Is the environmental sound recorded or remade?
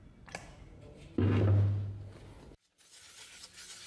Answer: recorded